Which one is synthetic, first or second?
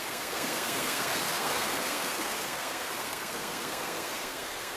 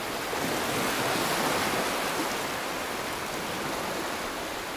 first